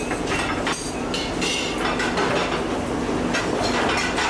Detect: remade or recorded recorded